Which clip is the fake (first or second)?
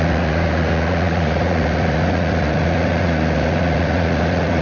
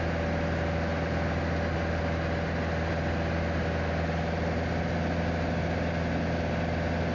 first